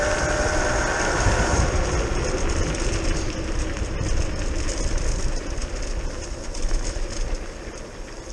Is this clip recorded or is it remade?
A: recorded